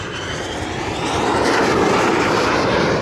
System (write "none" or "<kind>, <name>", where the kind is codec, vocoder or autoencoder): none